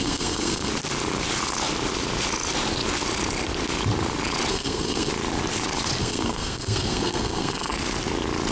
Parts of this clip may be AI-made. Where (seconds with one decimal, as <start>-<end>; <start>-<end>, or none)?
0.0-0.7; 4.5-5.1; 6.0-7.7